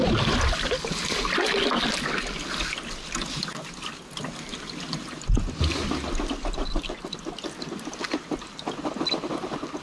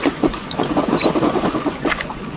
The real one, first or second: first